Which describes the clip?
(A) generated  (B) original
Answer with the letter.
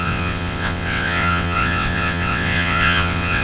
A